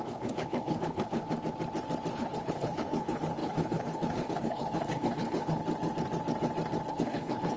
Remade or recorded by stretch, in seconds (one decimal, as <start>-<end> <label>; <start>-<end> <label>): 0.0-1.2 remade; 1.2-2.1 recorded; 2.1-5.6 remade; 5.6-6.9 recorded; 6.9-7.6 remade